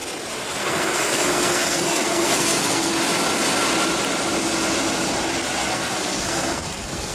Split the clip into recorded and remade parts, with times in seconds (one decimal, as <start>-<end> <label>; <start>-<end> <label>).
0.0-0.6 recorded; 0.6-2.9 remade; 2.9-5.6 recorded; 5.6-7.1 remade